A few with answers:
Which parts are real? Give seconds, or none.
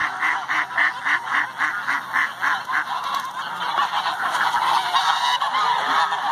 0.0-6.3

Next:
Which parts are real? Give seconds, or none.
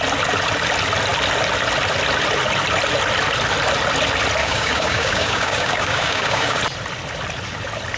0.0-4.4; 6.6-8.0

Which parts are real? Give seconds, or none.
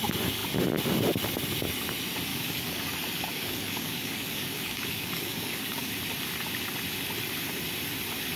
0.0-2.3; 2.9-3.3; 5.9-8.4